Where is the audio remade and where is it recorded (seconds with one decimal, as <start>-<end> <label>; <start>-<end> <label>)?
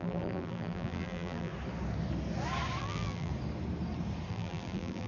0.0-1.5 remade; 1.5-2.8 recorded; 2.8-3.3 remade; 3.3-4.3 recorded; 4.3-5.1 remade